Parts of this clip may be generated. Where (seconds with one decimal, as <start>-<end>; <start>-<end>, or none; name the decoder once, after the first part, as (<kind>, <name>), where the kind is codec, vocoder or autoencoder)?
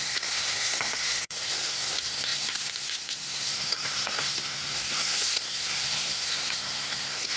0.0-7.4 (codec, SNAC)